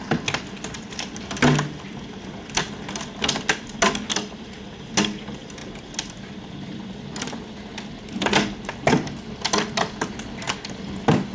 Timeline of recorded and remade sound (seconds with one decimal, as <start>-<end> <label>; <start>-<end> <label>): 0.0-11.3 recorded